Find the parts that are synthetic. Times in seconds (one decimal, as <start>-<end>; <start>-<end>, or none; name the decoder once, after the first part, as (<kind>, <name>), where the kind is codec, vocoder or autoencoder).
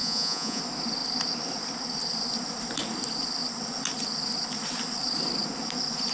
0.0-0.6 (vocoder, Vocos)